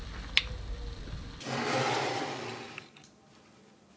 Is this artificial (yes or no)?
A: no